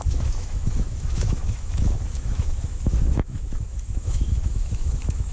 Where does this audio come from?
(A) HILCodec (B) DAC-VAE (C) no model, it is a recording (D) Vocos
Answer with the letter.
B